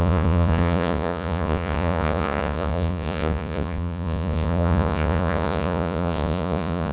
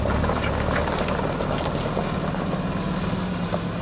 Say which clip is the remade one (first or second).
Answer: first